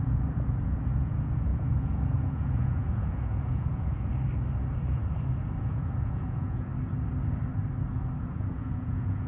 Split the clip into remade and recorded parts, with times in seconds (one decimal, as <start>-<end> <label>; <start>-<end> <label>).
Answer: 0.0-4.1 remade; 4.1-5.6 recorded; 5.6-6.7 remade; 6.7-8.2 recorded; 8.2-9.3 remade